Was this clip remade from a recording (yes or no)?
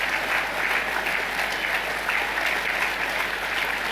no